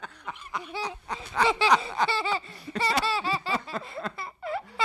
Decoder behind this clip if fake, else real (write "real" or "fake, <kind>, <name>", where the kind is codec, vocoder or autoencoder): real